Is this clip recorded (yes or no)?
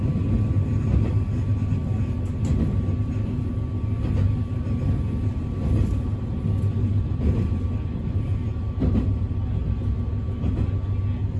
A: yes